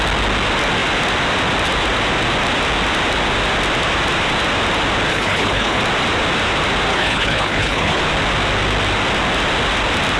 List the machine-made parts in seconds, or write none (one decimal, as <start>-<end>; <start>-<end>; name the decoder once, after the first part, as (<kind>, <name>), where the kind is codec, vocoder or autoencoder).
5.1-5.8 (codec, HILCodec); 6.9-8.0